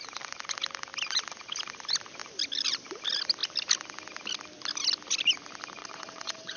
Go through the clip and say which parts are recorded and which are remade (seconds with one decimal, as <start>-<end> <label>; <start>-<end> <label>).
0.0-5.8 recorded; 5.8-6.6 remade